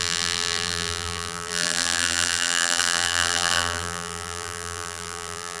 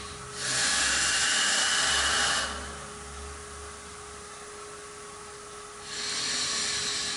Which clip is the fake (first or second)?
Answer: first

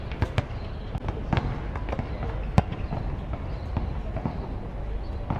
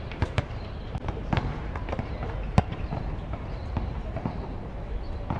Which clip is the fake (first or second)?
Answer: second